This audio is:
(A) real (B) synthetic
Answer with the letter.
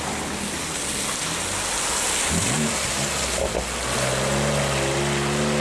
A